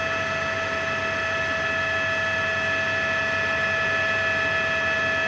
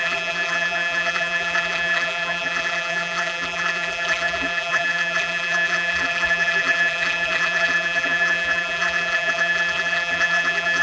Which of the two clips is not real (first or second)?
second